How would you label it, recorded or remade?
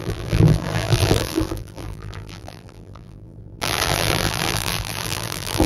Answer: remade